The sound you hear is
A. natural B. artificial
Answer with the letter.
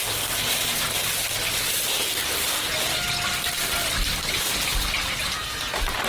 A